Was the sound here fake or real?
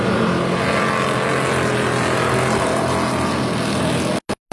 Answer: real